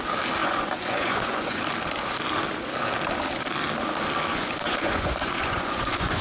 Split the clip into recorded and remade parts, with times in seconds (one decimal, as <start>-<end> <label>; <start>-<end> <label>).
0.0-0.4 recorded; 0.4-1.6 remade; 1.6-4.3 recorded; 4.3-6.2 remade